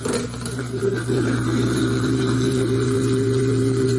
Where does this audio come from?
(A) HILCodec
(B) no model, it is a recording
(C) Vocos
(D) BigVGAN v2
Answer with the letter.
D